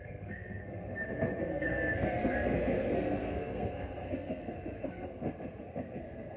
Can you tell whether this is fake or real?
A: fake